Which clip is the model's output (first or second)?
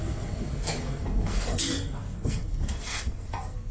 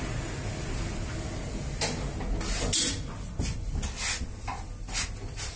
first